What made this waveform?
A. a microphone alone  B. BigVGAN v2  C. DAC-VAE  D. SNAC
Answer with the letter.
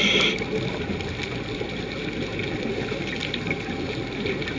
A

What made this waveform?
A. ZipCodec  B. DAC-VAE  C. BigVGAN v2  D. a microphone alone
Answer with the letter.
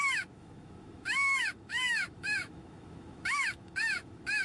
B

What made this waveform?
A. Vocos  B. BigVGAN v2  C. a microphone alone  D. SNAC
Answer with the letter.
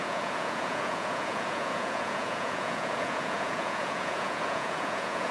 A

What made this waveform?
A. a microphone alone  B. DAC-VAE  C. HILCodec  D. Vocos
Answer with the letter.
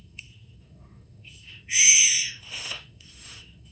B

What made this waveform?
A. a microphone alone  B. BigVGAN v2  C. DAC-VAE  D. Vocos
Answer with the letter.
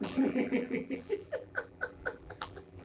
B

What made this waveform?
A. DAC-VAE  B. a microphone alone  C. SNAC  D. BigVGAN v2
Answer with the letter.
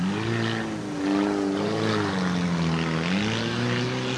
B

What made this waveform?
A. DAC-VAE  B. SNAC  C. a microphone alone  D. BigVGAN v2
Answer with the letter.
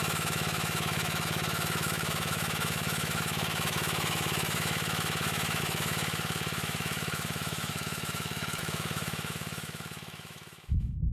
A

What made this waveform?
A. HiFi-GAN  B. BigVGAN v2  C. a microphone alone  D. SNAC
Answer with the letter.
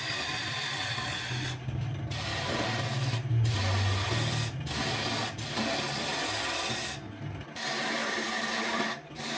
C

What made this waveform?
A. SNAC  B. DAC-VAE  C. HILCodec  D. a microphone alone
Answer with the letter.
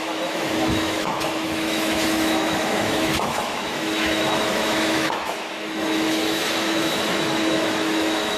B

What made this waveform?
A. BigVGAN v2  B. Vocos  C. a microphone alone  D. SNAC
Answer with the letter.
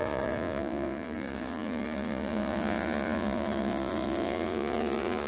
B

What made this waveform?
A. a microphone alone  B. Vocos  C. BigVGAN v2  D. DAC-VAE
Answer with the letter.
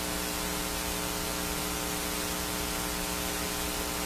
A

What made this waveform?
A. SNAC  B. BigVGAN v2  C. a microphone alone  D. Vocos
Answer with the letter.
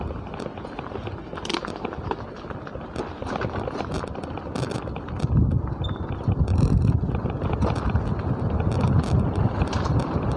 C